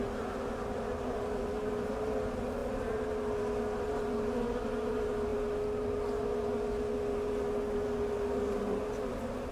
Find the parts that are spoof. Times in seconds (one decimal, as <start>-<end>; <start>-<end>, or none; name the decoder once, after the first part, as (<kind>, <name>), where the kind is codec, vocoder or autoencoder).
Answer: none